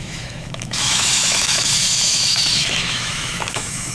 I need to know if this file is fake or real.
fake